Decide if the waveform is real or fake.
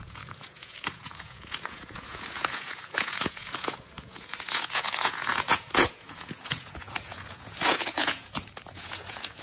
fake